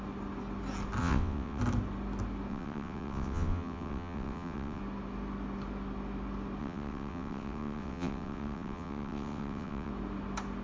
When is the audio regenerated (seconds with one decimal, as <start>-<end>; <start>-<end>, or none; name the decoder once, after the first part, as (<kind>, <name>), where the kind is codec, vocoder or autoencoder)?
1.0-1.6 (vocoder, WaveNeXt); 2.5-4.8; 6.6-9.9